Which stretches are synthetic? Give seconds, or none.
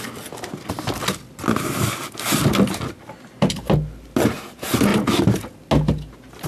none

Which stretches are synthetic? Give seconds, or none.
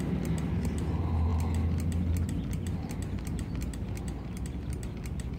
none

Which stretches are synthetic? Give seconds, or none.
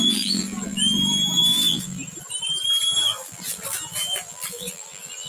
0.0-2.0 (vocoder, BigVGAN v2); 3.0-5.3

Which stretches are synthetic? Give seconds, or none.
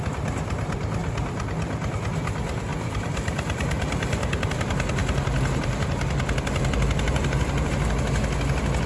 1.0-1.9 (vocoder, BigVGAN v2); 2.7-4.5; 5.0-7.7